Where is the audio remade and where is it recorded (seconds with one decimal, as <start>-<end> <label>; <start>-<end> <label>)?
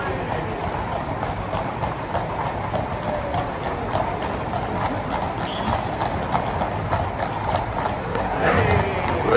0.0-8.0 recorded; 8.0-8.6 remade; 8.6-9.4 recorded